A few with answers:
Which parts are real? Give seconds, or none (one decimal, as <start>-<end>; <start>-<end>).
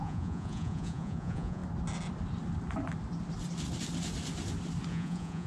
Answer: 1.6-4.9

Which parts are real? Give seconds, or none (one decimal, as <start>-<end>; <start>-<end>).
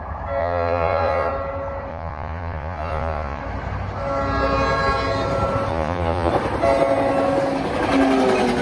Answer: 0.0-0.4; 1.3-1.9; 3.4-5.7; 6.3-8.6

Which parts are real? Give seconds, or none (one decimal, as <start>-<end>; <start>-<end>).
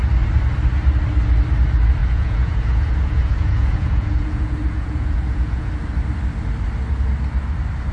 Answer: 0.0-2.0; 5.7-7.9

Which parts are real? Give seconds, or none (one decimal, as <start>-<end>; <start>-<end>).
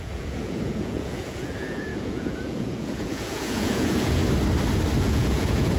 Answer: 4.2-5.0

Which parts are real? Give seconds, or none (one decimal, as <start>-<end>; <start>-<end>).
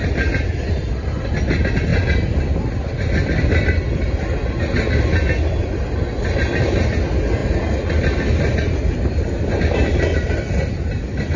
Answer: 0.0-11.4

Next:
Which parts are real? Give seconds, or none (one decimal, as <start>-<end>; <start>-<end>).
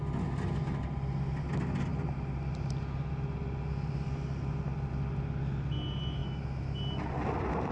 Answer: 0.0-7.7